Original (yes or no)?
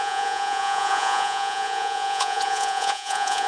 no